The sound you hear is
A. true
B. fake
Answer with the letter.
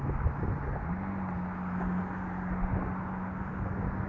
A